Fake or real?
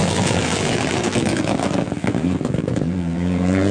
fake